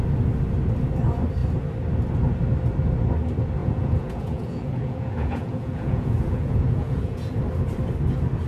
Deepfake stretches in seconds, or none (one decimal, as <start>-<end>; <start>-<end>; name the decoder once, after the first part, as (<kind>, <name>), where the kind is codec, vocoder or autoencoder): 3.6-7.4 (vocoder, Vocos)